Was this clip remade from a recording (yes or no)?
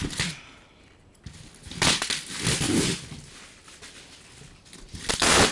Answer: no